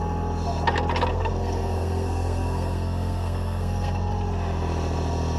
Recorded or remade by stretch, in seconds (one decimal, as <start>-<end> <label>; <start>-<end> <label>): 0.0-1.1 recorded; 1.1-4.1 remade; 4.1-5.4 recorded